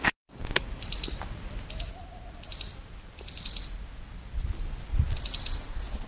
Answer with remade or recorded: recorded